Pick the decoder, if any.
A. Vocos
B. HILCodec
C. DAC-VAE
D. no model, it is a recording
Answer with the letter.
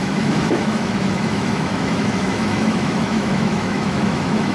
C